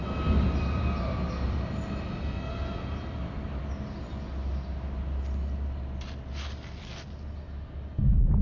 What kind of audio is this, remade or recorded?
recorded